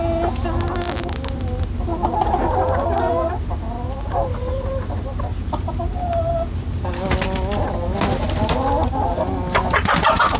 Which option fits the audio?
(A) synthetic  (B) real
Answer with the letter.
B